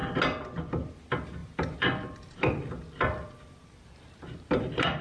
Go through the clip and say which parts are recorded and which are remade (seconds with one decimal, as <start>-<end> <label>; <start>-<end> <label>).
0.0-0.9 recorded; 0.9-5.0 remade